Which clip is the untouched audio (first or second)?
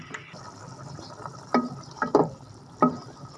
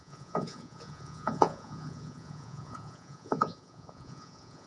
first